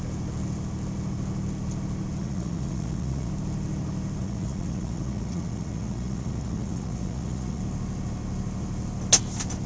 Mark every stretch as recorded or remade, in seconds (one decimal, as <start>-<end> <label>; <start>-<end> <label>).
0.0-2.2 recorded; 2.2-3.3 remade; 3.3-4.2 recorded; 4.2-7.6 remade; 7.6-9.7 recorded